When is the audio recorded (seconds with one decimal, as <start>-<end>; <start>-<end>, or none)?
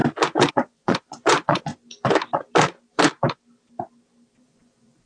0.0-0.5; 1.7-4.4